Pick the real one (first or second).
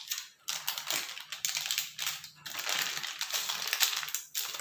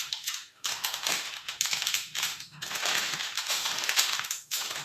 first